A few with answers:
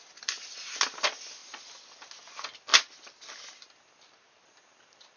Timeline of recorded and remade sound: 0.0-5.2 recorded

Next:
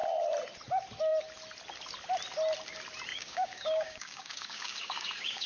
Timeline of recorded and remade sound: 0.0-3.1 recorded; 3.1-5.5 remade

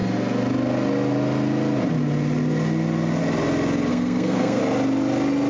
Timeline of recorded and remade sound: 0.0-3.9 recorded; 3.9-4.6 remade; 4.6-5.5 recorded

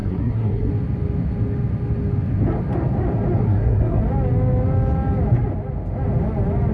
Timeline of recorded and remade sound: 0.0-0.7 remade; 0.7-3.4 recorded; 3.4-4.0 remade; 4.0-6.7 recorded

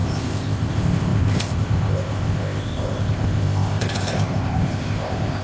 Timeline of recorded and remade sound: 0.0-5.4 remade

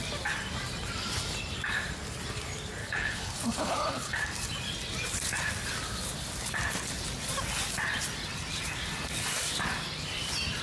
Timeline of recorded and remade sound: 0.0-2.8 recorded; 2.8-4.2 remade; 4.2-10.6 recorded

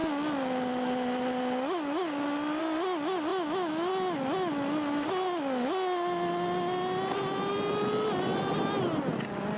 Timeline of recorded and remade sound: 0.0-9.6 recorded